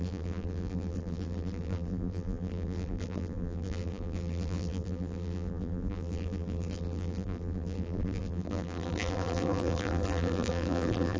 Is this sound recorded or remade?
remade